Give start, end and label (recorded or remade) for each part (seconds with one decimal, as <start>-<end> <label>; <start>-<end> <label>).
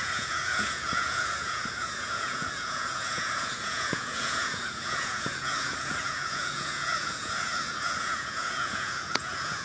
0.0-9.6 remade